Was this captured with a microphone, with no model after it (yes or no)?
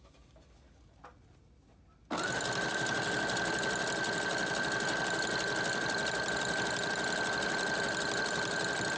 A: yes